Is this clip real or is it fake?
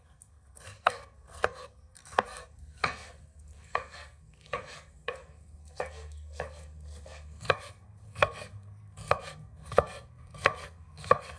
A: fake